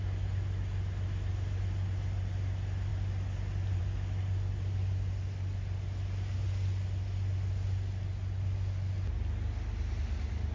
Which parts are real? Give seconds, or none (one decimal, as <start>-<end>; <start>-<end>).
0.0-10.5